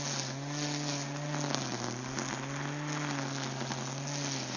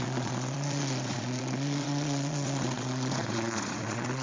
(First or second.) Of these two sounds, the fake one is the second